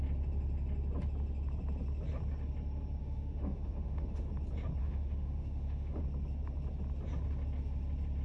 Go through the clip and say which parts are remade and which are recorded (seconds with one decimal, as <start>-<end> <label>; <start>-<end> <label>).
0.0-3.0 recorded; 3.0-4.3 remade; 4.3-4.8 recorded; 4.8-6.0 remade; 6.0-8.2 recorded